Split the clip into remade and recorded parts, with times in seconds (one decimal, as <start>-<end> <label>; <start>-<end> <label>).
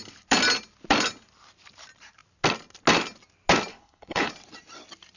0.0-3.7 recorded; 3.7-4.3 remade; 4.3-5.2 recorded